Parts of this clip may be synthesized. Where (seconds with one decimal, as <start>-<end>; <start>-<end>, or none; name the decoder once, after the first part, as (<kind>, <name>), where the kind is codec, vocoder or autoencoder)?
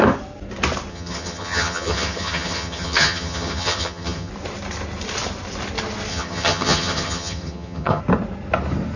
0.9-4.3 (vocoder, HiFi-GAN); 6.1-8.0